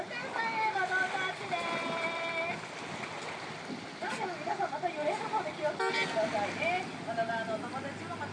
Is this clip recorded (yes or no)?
yes